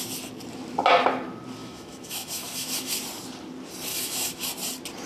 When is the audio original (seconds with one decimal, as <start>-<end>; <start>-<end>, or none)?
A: 0.0-1.6; 2.9-3.9; 4.5-5.1